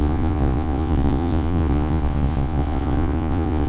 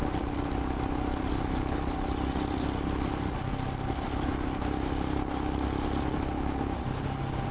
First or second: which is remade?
first